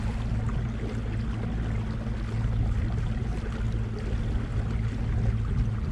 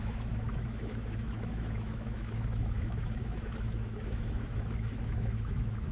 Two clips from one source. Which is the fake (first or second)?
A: second